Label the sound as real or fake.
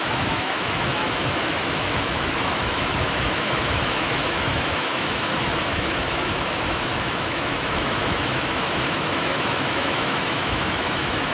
fake